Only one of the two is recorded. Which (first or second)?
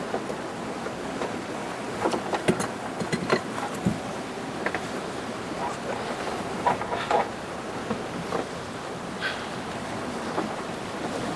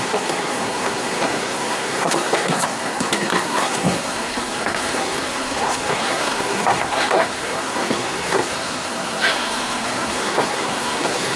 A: first